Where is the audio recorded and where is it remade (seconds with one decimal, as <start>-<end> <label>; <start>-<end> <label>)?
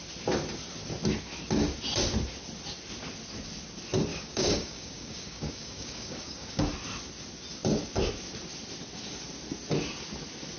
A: 0.0-4.1 recorded; 4.1-6.6 remade; 6.6-10.6 recorded